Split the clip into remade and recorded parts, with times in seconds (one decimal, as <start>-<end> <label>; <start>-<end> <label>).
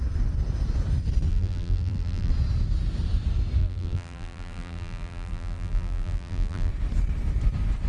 0.0-1.3 recorded; 1.3-2.3 remade; 2.3-3.6 recorded; 3.6-6.7 remade; 6.7-7.9 recorded